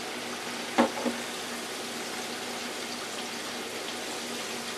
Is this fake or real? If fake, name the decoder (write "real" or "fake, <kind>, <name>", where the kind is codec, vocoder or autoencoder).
real